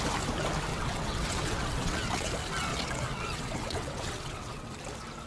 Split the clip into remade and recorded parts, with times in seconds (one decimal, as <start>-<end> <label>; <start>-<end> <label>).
0.0-0.7 recorded; 0.7-2.3 remade; 2.3-2.7 recorded; 2.7-4.7 remade; 4.7-5.3 recorded